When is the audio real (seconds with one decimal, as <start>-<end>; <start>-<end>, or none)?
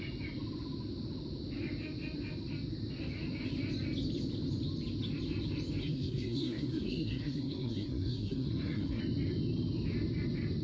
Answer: 0.0-5.8; 9.0-10.6